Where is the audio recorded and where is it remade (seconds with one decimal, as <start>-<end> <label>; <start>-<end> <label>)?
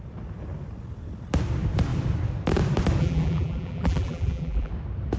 0.0-3.0 recorded; 3.0-4.7 remade; 4.7-5.2 recorded